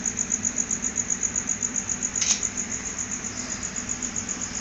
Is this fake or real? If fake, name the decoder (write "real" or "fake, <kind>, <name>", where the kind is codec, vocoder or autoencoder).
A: real